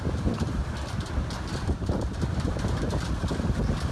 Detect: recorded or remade remade